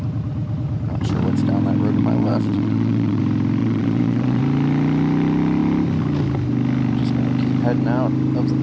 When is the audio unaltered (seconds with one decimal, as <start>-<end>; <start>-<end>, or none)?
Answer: 0.0-2.0; 3.2-3.6; 4.4-8.6